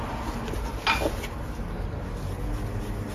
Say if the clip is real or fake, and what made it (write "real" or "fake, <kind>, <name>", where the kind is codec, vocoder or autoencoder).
real